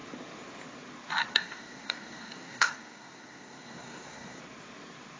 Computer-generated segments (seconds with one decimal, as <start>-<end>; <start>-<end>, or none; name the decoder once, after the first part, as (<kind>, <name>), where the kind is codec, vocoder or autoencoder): 1.3-4.4 (codec, SNAC)